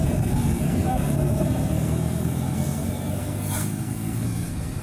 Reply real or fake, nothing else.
fake